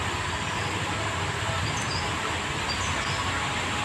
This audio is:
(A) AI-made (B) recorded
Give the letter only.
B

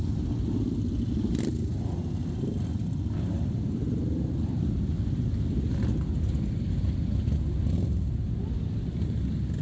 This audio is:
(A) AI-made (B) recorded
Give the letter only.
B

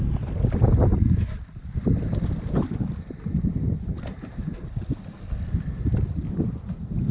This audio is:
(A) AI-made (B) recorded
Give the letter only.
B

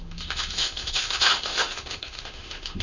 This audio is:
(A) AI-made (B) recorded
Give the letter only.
A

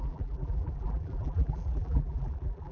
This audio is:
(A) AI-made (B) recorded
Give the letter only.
A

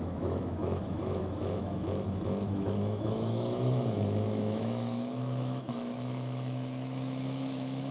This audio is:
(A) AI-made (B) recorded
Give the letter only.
A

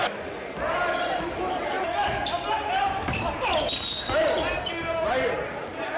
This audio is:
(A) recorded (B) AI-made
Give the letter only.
A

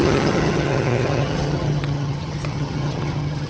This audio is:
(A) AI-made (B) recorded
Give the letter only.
A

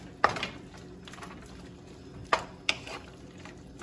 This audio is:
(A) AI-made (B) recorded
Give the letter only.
B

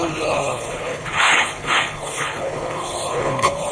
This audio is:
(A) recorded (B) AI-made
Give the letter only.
B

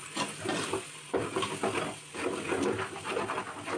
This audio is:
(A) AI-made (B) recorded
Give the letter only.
B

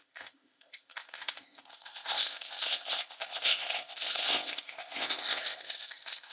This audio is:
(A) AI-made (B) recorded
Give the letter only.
A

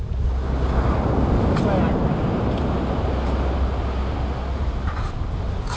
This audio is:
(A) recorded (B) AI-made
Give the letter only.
A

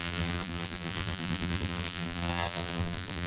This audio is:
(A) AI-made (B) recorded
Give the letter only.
A